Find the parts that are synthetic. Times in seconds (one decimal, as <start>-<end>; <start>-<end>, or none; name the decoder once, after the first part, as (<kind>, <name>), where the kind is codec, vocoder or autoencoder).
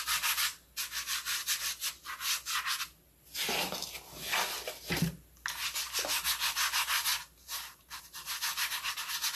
none